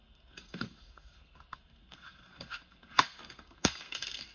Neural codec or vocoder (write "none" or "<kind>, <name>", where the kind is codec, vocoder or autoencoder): codec, SNAC